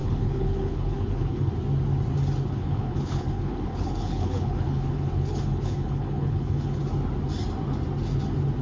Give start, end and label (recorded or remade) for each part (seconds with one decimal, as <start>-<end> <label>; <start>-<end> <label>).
0.0-1.5 remade; 1.5-2.5 recorded; 2.5-6.8 remade; 6.8-8.6 recorded